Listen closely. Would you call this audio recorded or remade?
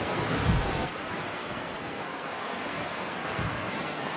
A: remade